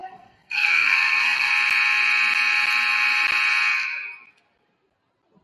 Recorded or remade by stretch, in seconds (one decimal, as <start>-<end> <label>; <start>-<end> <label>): 0.0-1.5 remade; 1.5-5.4 recorded